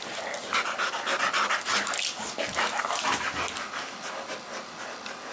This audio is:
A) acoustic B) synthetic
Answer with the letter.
A